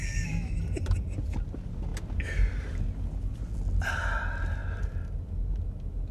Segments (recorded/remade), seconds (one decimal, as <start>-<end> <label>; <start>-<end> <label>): 0.0-0.6 remade; 0.6-6.1 recorded